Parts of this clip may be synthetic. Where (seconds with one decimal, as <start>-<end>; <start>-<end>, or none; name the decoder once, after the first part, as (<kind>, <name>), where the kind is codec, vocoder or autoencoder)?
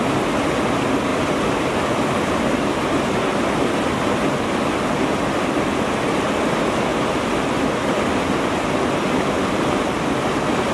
1.1-1.7 (vocoder, BigVGAN v2); 3.3-5.8